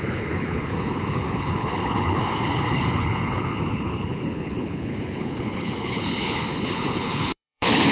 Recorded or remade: remade